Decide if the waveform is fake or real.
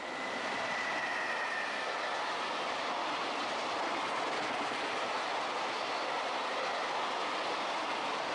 real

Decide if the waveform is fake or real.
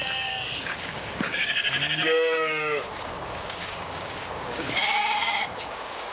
fake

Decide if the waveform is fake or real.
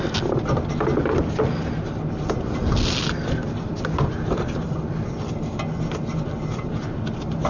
real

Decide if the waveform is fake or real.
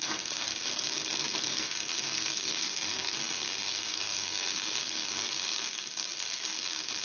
fake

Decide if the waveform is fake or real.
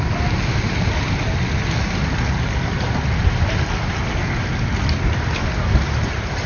real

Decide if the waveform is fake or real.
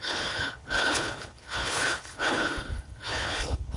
fake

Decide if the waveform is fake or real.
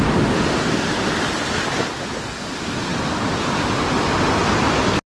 real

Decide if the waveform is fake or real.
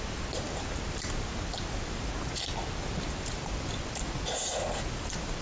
real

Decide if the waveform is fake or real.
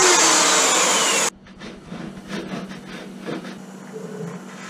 real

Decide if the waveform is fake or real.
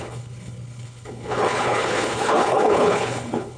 fake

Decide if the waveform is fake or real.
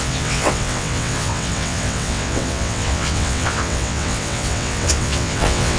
fake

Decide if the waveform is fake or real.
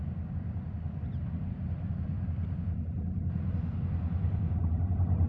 real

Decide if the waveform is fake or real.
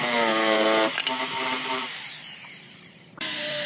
fake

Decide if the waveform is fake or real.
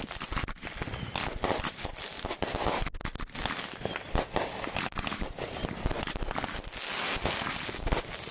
real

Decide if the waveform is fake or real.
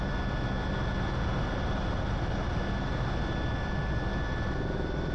real